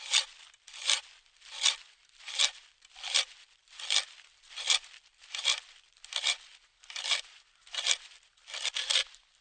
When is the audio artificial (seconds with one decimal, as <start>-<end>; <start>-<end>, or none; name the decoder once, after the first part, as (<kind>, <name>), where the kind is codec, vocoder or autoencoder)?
none